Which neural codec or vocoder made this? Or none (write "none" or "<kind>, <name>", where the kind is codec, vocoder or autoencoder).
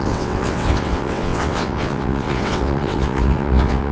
vocoder, WaveNeXt